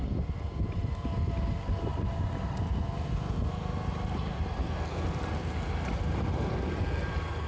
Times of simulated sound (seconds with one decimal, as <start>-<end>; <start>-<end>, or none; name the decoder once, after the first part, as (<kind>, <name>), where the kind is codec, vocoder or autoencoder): none